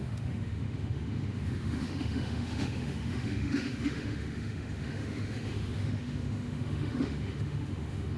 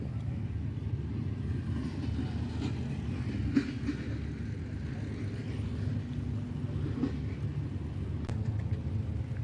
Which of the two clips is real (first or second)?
second